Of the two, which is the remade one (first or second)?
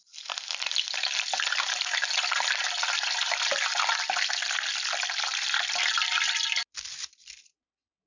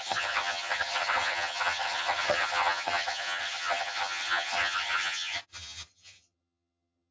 second